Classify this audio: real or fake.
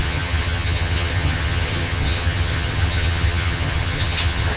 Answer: fake